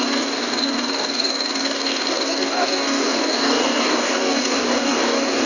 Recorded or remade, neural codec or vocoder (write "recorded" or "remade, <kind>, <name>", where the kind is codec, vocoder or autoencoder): remade, codec, DAC